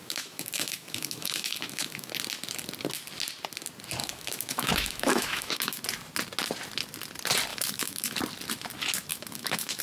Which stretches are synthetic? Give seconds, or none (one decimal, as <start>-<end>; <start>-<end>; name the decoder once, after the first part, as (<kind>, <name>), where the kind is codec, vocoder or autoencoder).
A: 0.0-2.1 (autoencoder, DAC-VAE); 4.0-5.8; 7.5-8.2; 9.1-9.8